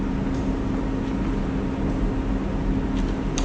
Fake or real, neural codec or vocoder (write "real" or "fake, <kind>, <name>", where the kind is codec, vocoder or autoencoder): real